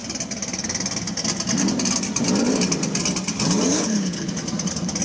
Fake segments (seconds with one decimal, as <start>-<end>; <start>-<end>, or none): 3.7-4.3